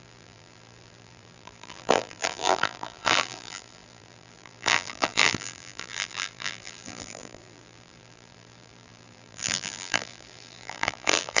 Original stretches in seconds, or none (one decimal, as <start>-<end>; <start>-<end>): none